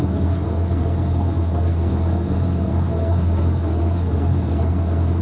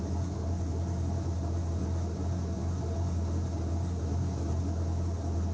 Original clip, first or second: second